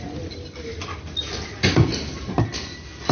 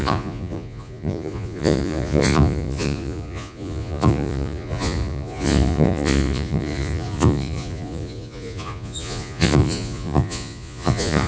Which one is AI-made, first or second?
second